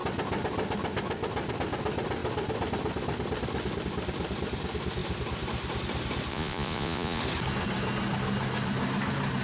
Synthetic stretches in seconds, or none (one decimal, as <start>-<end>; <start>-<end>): 6.3-7.2